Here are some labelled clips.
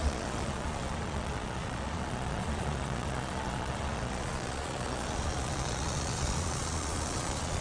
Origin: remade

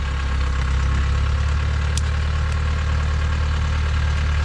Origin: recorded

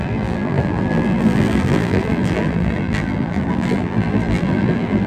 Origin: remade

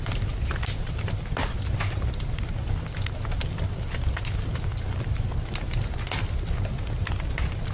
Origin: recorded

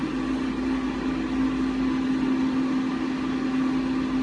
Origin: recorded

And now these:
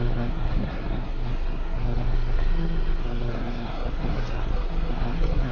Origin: remade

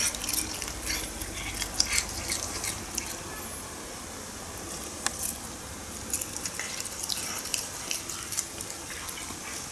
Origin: recorded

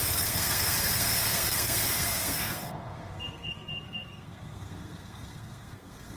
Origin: remade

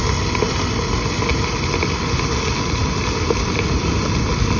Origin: recorded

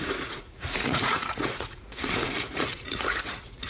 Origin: remade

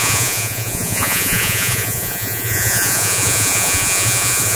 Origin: remade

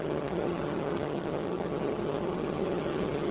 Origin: remade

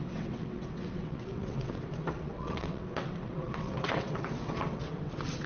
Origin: remade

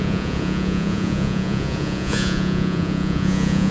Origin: remade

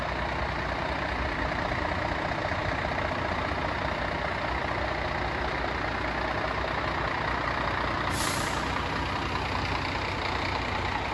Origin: recorded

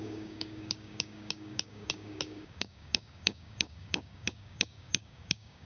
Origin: remade